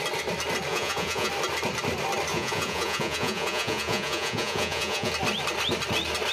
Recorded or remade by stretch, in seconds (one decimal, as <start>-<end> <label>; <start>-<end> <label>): 0.0-0.7 recorded; 0.7-1.3 remade; 1.3-2.3 recorded; 2.3-5.1 remade; 5.1-6.3 recorded